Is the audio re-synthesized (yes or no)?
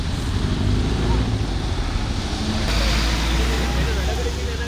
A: no